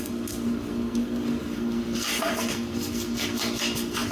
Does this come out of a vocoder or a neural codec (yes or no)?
yes